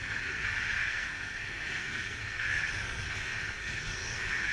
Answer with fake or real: fake